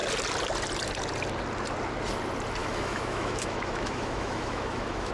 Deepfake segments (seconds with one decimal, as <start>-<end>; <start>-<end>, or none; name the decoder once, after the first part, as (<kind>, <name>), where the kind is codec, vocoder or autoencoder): 2.6-5.1 (autoencoder, DAC-VAE)